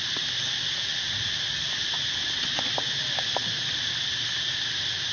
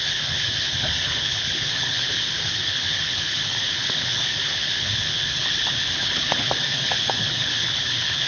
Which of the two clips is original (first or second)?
first